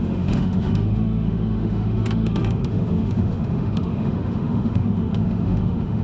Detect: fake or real fake